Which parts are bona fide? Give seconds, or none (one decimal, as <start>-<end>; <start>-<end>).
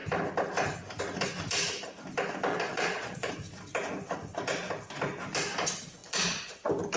0.0-2.5; 3.3-6.0; 6.6-7.0